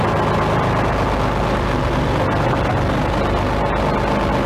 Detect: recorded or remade recorded